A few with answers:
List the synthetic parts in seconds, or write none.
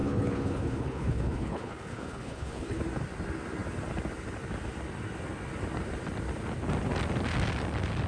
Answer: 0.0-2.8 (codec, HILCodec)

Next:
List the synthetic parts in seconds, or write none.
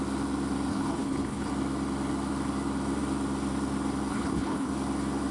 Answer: 0.7-1.5 (codec, HILCodec); 4.1-4.7